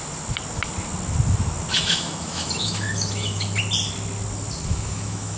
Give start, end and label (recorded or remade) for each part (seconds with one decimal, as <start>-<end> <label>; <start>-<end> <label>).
0.0-1.7 recorded; 1.7-3.6 remade; 3.6-4.7 recorded; 4.7-5.4 remade